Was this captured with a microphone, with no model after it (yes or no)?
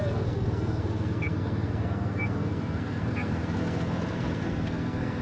no